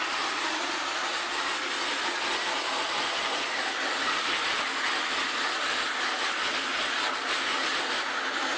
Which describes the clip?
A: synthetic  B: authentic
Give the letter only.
B